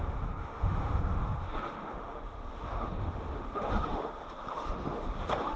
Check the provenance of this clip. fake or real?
fake